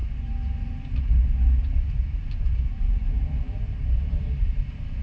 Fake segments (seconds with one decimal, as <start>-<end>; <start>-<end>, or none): 0.0-1.2; 1.6-4.6